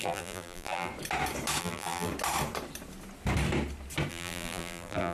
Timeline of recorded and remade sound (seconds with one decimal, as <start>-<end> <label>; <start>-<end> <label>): 0.0-0.9 remade; 0.9-1.6 recorded; 1.6-2.1 remade; 2.1-4.1 recorded; 4.1-5.1 remade